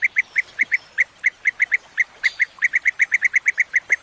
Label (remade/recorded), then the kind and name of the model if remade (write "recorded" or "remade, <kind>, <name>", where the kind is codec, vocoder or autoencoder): recorded